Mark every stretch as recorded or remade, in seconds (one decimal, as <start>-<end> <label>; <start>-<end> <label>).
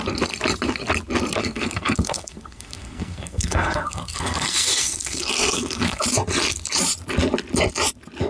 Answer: 0.0-1.4 recorded; 1.4-6.0 remade; 6.0-8.3 recorded